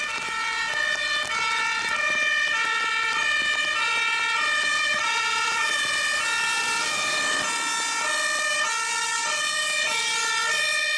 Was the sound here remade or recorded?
remade